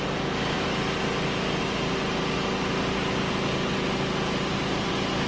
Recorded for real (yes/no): yes